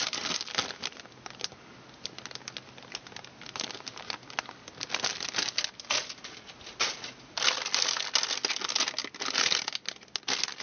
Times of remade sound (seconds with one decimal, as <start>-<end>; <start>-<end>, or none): none

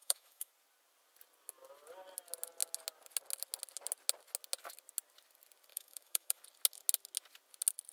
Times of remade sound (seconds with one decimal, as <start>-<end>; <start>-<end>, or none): 0.0-0.5; 5.7-6.4

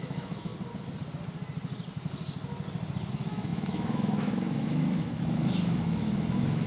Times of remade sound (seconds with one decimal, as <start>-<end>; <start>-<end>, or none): 0.0-0.5; 3.1-6.7

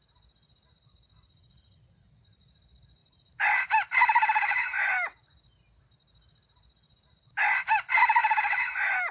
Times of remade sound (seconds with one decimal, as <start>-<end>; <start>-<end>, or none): none

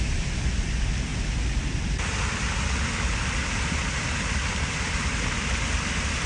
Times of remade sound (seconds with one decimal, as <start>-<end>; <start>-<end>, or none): 0.0-1.1; 4.5-6.3